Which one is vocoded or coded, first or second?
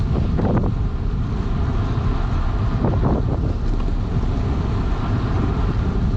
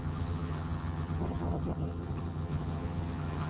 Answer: second